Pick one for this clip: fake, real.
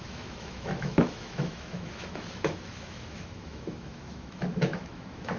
fake